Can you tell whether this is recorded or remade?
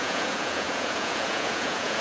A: remade